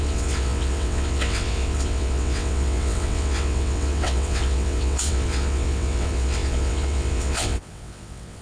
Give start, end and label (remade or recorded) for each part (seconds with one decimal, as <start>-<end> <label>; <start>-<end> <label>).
0.0-8.4 remade